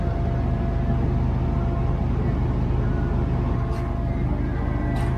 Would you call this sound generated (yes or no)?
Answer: no